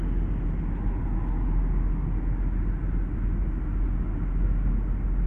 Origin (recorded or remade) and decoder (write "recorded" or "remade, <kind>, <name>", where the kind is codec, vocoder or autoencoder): recorded